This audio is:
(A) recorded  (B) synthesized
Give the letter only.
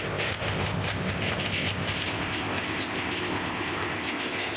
B